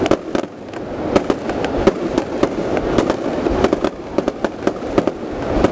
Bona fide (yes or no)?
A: yes